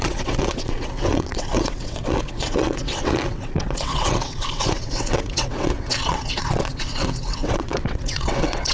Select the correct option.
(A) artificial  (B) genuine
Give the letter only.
A